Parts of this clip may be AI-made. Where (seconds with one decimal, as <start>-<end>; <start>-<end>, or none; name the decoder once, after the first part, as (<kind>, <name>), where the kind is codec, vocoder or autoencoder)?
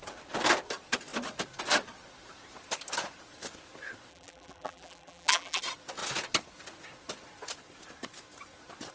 4.1-5.6 (vocoder, BigVGAN v2)